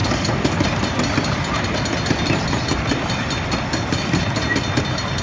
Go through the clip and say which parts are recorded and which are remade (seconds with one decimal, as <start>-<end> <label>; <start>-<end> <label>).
0.0-0.6 remade; 0.6-5.2 recorded

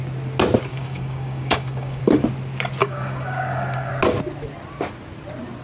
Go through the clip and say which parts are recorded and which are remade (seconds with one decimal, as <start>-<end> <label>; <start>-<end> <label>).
0.0-0.7 recorded; 0.7-2.0 remade; 2.0-2.8 recorded; 2.8-3.9 remade; 3.9-5.6 recorded